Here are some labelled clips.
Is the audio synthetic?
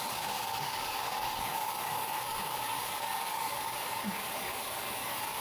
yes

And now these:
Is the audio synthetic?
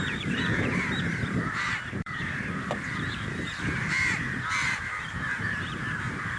yes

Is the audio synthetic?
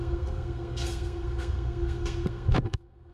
yes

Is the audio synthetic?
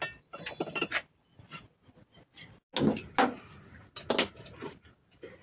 no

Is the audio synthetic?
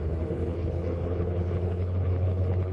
yes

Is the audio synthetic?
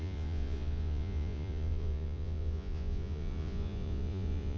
yes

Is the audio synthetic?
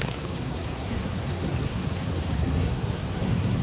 yes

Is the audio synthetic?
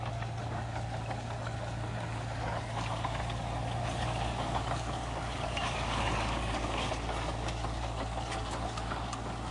yes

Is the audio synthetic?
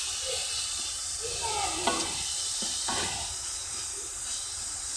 no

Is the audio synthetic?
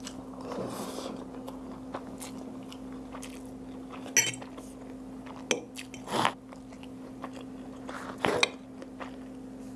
no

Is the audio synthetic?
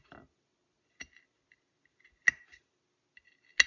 no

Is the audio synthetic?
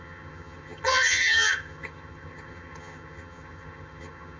yes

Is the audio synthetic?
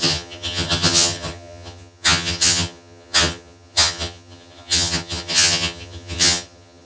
yes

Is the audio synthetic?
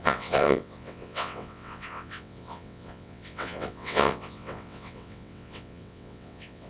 yes